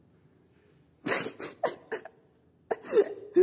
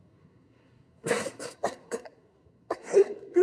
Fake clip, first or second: second